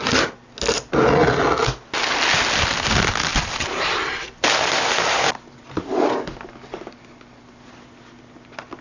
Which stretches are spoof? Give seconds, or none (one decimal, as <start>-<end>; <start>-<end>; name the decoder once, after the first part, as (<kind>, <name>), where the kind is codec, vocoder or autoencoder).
none